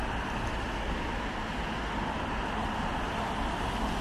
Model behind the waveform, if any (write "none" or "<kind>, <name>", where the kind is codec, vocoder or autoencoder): none